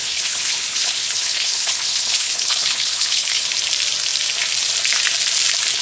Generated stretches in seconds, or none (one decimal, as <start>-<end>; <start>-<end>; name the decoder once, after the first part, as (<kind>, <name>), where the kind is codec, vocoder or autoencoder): 0.0-3.5 (codec, HILCodec)